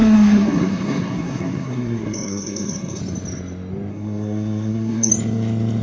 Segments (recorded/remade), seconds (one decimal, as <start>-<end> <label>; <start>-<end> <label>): 0.0-3.0 remade; 3.0-3.9 recorded; 3.9-5.1 remade; 5.1-5.8 recorded